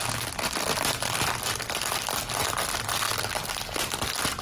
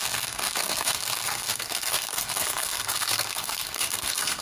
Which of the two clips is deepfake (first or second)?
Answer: second